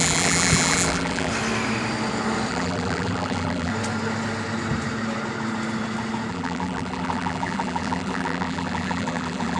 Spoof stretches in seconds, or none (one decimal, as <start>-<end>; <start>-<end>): 0.0-1.3; 2.5-3.7; 6.3-9.6

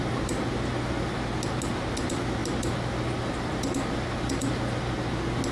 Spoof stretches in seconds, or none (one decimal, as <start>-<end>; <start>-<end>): 2.4-4.8

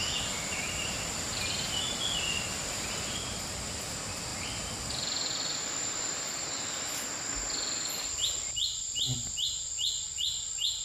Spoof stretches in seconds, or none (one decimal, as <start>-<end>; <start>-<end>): none

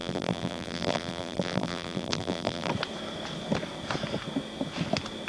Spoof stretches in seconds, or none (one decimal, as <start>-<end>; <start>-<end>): 0.0-2.7

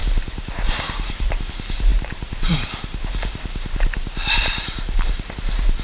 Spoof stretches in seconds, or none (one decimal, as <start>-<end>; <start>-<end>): 0.0-1.5; 1.9-5.3

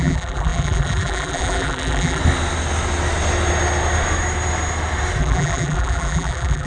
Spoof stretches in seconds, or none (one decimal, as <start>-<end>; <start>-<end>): 0.0-2.2; 5.2-6.7

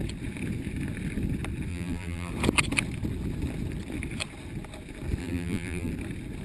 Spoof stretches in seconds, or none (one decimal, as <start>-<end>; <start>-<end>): 1.7-2.3; 5.2-5.9